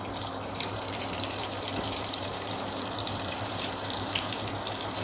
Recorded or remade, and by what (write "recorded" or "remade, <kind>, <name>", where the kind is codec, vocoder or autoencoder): remade, vocoder, BigVGAN v2